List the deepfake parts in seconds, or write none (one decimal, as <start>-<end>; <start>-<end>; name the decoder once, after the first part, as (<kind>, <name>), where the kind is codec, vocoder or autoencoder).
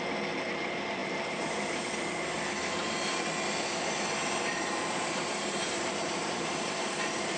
1.0-1.8 (vocoder, BigVGAN v2); 4.2-6.8